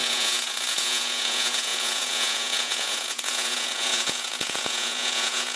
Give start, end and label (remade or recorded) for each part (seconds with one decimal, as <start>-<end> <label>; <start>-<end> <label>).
0.0-5.6 remade